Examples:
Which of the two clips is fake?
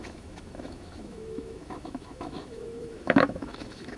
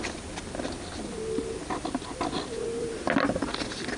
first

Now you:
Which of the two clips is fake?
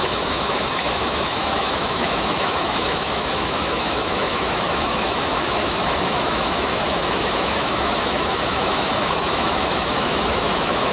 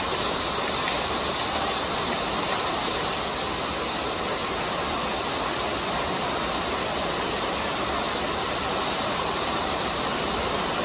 first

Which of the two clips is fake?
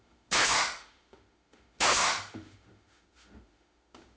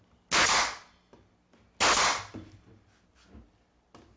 first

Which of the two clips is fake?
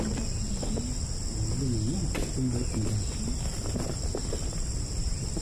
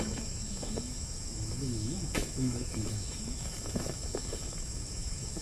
second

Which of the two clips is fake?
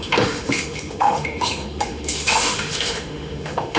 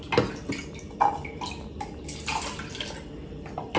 first